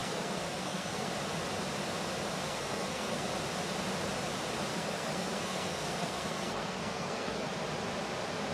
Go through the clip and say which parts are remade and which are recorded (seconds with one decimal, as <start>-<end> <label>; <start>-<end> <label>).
0.0-1.1 remade; 1.1-2.4 recorded; 2.4-3.3 remade; 3.3-4.7 recorded; 4.7-7.5 remade; 7.5-8.5 recorded

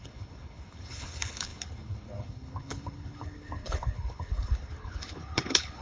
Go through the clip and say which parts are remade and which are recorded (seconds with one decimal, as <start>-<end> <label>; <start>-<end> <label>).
0.0-5.8 remade

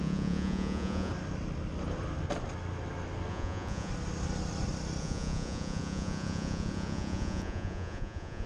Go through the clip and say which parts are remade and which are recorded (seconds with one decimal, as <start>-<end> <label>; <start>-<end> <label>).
0.0-1.1 remade; 1.1-3.3 recorded; 3.3-3.9 remade; 3.9-5.0 recorded; 5.0-8.5 remade

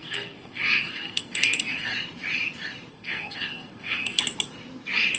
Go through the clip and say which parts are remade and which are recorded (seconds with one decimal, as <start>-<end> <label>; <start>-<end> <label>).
0.0-1.9 remade; 1.9-2.9 recorded; 2.9-4.2 remade; 4.2-5.2 recorded

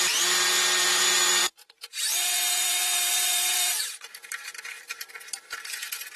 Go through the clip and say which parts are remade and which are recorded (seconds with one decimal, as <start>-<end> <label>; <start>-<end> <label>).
0.0-1.4 recorded; 1.4-5.1 remade; 5.1-6.2 recorded

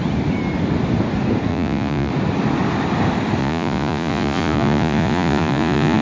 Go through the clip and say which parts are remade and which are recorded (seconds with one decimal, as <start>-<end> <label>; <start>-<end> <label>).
0.0-1.5 recorded; 1.5-2.1 remade; 2.1-3.4 recorded; 3.4-6.0 remade